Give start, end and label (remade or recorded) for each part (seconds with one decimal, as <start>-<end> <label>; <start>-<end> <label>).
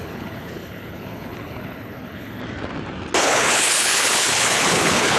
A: 0.0-2.4 remade; 2.4-3.2 recorded; 3.2-5.2 remade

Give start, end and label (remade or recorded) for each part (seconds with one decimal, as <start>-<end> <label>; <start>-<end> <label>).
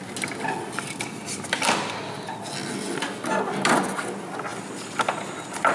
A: 0.0-5.7 recorded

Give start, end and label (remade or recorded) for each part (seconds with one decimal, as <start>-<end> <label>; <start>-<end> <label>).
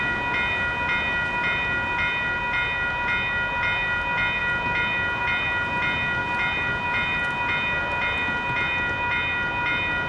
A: 0.0-10.1 recorded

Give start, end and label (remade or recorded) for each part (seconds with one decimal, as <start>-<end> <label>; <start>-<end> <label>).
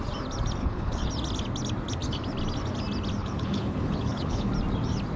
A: 0.0-0.6 recorded; 0.6-1.1 remade; 1.1-3.2 recorded; 3.2-4.5 remade; 4.5-5.2 recorded